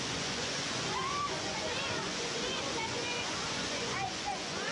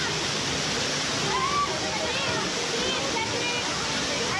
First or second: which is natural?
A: second